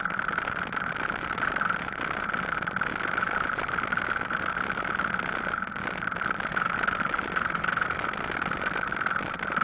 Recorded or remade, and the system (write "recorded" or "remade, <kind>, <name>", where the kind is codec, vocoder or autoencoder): recorded